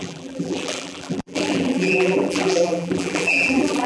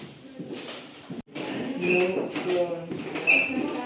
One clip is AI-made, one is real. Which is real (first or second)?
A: second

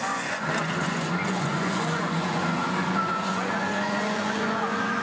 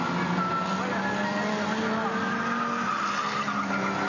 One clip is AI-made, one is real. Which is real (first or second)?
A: second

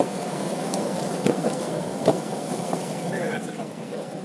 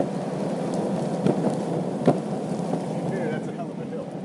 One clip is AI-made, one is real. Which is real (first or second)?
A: second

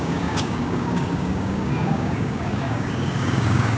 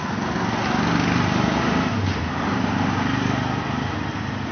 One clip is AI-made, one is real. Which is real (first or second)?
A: second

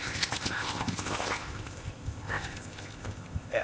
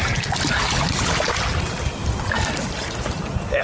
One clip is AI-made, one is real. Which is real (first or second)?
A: second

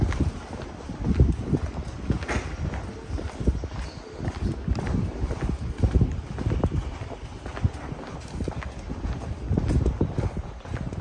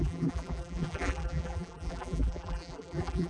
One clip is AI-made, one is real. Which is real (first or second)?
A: first